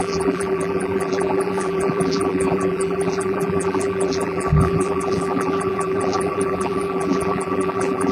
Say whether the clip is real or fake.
fake